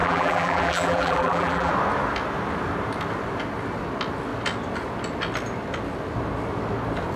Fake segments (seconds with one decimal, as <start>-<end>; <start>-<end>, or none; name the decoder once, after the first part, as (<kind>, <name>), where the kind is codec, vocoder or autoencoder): 0.0-1.7 (vocoder, BigVGAN v2)